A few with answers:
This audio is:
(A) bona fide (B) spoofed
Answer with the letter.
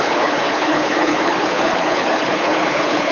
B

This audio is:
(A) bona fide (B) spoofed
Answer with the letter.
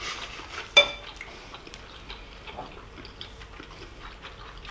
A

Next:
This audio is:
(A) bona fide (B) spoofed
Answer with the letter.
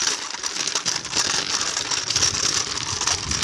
A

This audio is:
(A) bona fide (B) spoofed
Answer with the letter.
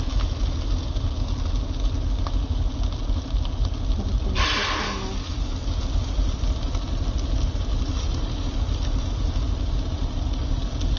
A